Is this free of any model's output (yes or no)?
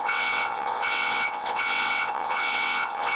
no